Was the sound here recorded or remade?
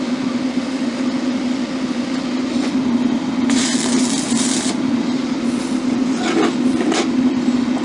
remade